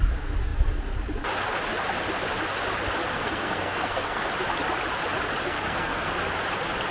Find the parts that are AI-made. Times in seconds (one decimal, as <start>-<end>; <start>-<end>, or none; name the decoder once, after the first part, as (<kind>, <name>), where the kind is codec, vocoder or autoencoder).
3.1-4.3 (codec, SNAC); 5.4-6.1